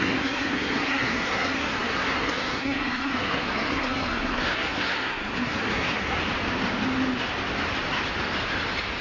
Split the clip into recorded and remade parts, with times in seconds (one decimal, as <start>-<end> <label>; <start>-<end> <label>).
0.0-6.2 remade; 6.2-9.0 recorded